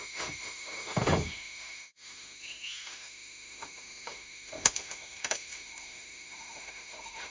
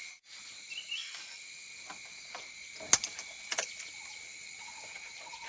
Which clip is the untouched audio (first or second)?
second